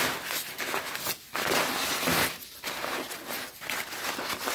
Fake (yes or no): no